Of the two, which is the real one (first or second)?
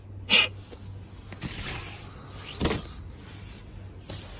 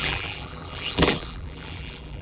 first